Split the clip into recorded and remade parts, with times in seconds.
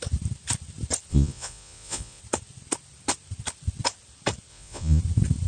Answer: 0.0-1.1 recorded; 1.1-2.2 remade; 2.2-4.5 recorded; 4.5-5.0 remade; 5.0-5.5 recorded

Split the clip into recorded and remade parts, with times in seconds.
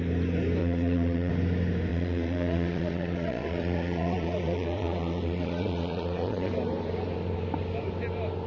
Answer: 0.0-0.6 recorded; 0.6-1.3 remade; 1.3-1.9 recorded; 1.9-6.5 remade; 6.5-8.5 recorded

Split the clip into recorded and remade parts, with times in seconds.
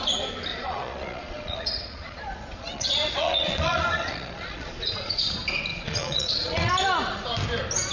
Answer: 0.0-0.5 recorded; 0.5-5.2 remade; 5.2-5.7 recorded; 5.7-6.7 remade; 6.7-7.9 recorded